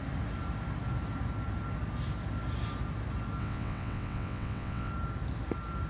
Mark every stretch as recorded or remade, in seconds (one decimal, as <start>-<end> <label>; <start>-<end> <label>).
0.0-3.4 recorded; 3.4-4.9 remade; 4.9-5.9 recorded